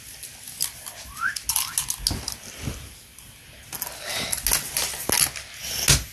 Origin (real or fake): real